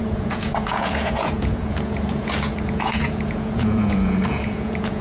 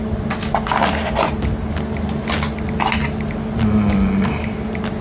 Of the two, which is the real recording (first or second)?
second